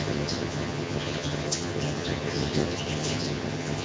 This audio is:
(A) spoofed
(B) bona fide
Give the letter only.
A